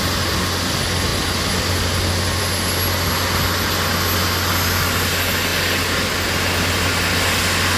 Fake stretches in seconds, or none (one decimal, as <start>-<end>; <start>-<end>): none